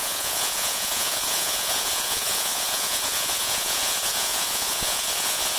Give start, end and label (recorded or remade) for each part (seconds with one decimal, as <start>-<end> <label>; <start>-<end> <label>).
0.0-5.6 remade